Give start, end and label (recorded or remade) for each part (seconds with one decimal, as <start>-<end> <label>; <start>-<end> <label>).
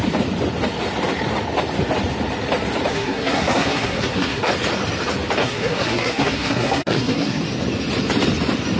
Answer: 0.0-2.9 recorded; 2.9-4.5 remade; 4.5-5.4 recorded; 5.4-7.4 remade; 7.4-8.8 recorded